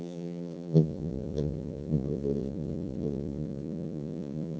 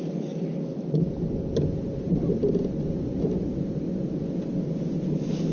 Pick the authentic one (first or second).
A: second